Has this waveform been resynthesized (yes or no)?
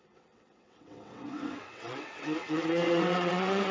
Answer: yes